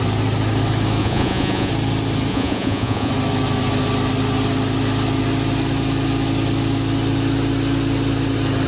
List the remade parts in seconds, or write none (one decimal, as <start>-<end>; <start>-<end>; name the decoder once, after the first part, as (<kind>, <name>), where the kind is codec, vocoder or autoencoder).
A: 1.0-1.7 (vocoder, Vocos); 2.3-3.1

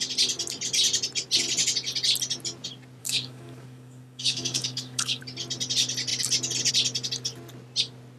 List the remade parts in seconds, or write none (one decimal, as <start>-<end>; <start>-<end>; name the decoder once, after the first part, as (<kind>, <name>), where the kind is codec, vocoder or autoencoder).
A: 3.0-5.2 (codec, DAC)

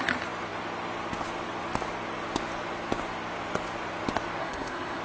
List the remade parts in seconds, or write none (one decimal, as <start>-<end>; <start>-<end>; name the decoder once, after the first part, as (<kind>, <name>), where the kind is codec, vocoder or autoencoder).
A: 4.4-5.0 (codec, SNAC)

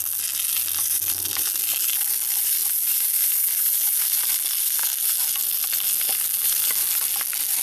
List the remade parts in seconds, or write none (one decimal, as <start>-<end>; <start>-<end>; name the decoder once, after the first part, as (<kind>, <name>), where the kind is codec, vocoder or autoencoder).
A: none

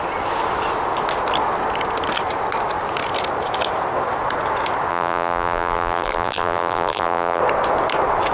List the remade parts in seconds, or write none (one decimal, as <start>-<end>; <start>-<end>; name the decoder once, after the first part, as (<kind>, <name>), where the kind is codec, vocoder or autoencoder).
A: 4.9-7.4 (vocoder, BigVGAN v2)

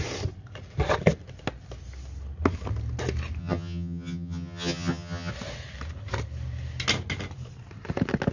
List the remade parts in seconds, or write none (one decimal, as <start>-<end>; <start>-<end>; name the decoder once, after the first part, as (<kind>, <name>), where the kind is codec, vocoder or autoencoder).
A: 3.4-5.3 (vocoder, HiFi-GAN)

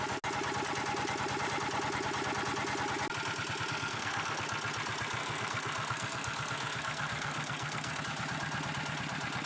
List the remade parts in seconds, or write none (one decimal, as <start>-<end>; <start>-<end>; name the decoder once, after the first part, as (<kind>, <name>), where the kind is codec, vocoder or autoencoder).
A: 3.7-4.4 (codec, SNAC); 5.2-8.0

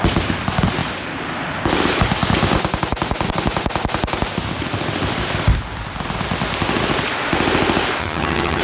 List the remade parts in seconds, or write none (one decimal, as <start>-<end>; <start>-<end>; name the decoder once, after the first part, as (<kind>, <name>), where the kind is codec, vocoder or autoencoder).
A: 8.0-8.6 (vocoder, HiFi-GAN)